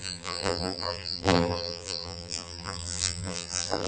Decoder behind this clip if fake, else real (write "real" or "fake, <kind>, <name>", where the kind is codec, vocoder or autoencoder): fake, vocoder, BigVGAN v2